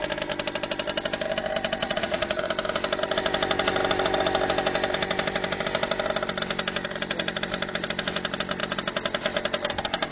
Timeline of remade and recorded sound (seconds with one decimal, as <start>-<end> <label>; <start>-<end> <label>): 0.0-1.8 recorded; 1.8-2.5 remade; 2.5-10.1 recorded